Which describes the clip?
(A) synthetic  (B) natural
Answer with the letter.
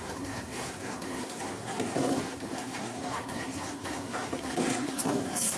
A